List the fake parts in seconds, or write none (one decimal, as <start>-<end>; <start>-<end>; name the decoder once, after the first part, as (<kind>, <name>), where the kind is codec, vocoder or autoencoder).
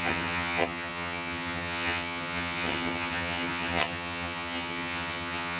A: 0.0-5.6 (vocoder, HiFi-GAN)